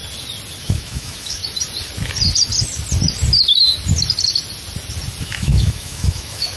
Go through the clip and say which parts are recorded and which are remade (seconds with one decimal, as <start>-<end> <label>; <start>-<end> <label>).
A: 0.0-0.6 recorded; 0.6-1.4 remade; 1.4-5.2 recorded; 5.2-6.6 remade